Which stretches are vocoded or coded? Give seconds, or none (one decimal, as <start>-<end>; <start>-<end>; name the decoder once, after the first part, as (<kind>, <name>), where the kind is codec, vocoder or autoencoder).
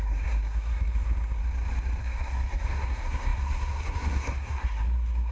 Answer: 0.0-1.4 (codec, SNAC); 2.0-5.3